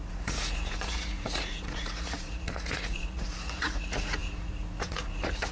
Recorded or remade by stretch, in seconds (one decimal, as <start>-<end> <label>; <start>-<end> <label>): 0.0-5.5 remade